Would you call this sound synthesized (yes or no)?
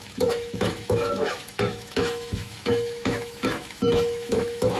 yes